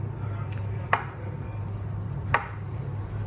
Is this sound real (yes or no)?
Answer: yes